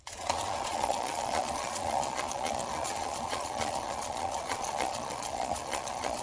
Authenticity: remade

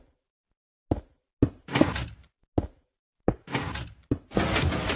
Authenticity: recorded